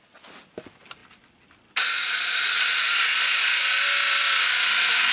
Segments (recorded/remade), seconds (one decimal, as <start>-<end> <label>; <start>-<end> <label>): 0.0-5.1 recorded